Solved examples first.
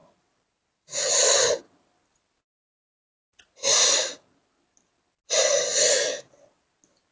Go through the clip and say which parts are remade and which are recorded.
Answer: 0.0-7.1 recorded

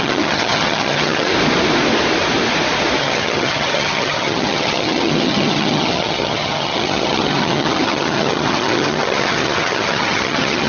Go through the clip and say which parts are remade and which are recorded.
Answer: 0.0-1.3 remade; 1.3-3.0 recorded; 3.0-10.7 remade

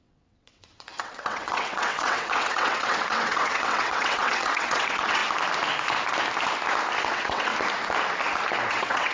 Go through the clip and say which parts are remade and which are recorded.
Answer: 0.0-5.2 remade; 5.2-7.1 recorded; 7.1-7.5 remade; 7.5-8.7 recorded; 8.7-9.1 remade

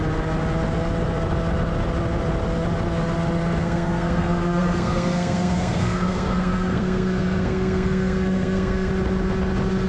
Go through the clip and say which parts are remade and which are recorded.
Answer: 0.0-3.6 recorded; 3.6-8.9 remade; 8.9-9.9 recorded